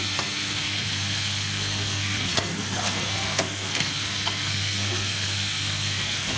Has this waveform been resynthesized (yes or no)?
yes